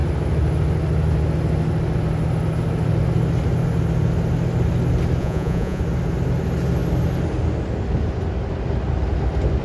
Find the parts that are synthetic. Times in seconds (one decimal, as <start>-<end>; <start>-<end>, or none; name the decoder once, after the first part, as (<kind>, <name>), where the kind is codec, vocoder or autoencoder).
5.2-5.8 (vocoder, Vocos)